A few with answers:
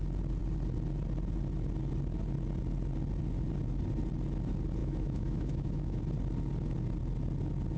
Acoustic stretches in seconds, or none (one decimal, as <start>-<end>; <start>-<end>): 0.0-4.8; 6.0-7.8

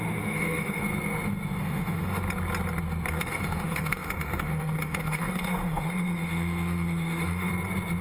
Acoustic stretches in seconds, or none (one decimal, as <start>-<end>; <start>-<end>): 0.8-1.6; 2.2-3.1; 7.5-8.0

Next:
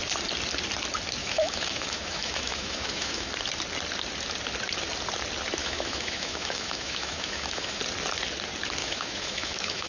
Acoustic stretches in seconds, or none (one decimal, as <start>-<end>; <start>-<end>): 0.0-1.2; 3.3-5.6; 7.8-8.8

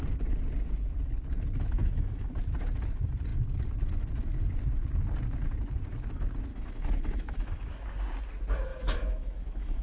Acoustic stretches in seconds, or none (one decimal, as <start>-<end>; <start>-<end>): 0.0-1.8; 2.3-6.5; 7.7-8.7

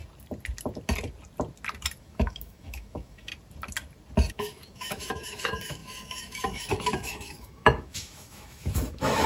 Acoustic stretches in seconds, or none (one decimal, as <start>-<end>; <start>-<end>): 0.0-2.0; 3.3-4.3

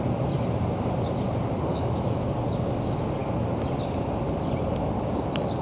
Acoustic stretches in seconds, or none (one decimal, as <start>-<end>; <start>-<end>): 0.0-1.7; 2.3-5.6

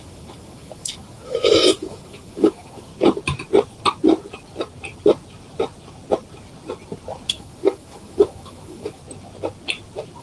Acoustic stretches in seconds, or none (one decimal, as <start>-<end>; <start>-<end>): 2.9-7.3; 9.0-10.2